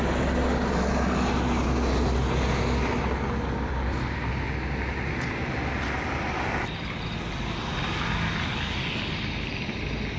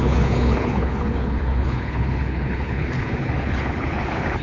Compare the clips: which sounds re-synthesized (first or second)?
second